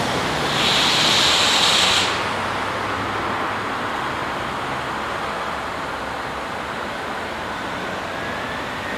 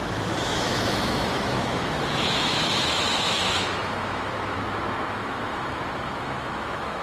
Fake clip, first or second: second